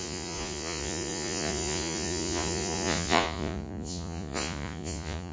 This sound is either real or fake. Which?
fake